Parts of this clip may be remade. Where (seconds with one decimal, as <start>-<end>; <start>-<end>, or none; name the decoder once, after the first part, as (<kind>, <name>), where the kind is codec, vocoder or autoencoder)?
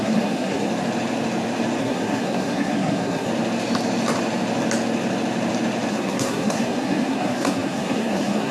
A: 0.0-0.7 (codec, SNAC); 1.8-3.3; 5.9-8.5